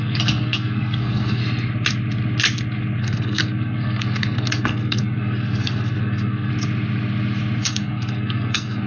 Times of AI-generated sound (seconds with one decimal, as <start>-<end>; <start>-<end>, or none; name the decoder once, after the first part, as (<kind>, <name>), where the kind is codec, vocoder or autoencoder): 0.0-1.4 (codec, SNAC); 3.0-6.5; 7.6-8.9